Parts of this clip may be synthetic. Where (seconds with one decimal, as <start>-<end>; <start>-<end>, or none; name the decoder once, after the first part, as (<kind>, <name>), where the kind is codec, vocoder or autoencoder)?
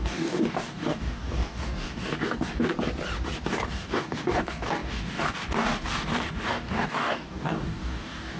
0.0-2.7 (codec, DAC); 3.5-8.4